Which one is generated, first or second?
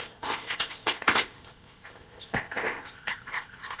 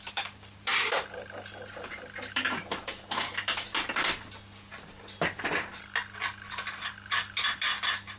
first